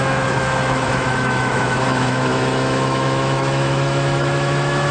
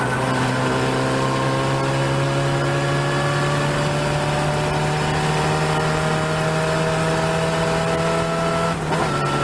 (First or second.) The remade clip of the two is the first